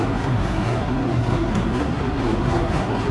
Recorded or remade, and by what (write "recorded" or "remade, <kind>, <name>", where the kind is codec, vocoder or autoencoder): remade, codec, SNAC